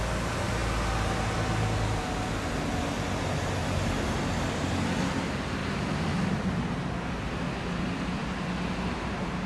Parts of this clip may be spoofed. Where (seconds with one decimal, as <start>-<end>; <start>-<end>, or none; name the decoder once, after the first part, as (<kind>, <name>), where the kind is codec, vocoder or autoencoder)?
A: 3.6-7.3 (vocoder, BigVGAN v2)

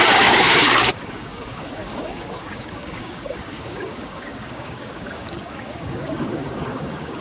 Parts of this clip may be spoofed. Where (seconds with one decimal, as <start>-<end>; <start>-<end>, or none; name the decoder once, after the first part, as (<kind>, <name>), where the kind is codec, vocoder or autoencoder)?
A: 0.0-7.2 (codec, DAC)

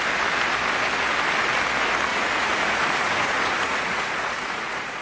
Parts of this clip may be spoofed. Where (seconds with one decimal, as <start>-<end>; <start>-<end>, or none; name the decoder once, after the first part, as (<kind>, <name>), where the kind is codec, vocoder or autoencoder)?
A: 2.1-5.0 (vocoder, Vocos)

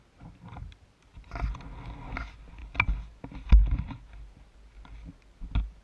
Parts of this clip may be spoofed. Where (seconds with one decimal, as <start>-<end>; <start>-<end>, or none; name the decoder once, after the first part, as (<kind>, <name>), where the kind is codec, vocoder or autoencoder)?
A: none

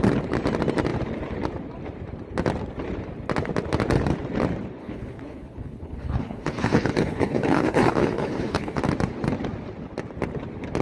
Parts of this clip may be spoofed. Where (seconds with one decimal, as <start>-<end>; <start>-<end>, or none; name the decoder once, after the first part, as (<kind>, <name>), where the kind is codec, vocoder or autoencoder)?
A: 4.8-8.8 (codec, HILCodec)

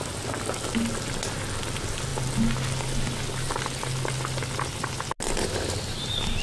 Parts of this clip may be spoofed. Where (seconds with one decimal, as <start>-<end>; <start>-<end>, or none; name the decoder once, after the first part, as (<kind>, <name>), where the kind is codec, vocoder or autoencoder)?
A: none